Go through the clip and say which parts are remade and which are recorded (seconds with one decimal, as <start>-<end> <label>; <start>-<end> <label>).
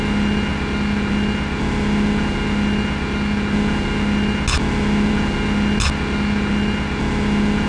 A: 0.0-7.7 recorded